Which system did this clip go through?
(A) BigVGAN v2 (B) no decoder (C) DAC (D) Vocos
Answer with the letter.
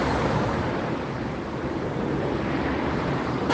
A